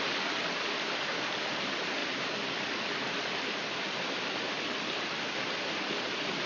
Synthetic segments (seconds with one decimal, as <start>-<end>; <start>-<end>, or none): none